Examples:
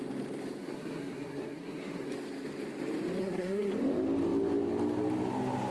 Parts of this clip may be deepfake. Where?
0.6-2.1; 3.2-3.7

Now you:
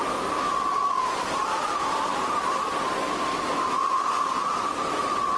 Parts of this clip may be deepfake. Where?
none

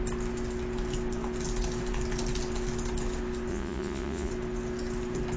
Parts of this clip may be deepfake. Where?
3.5-4.3

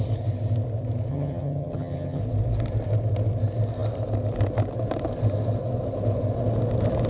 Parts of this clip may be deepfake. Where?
1.1-2.2

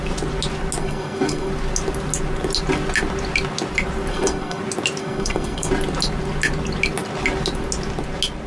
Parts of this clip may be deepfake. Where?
0.8-1.5; 4.1-4.6; 5.0-5.7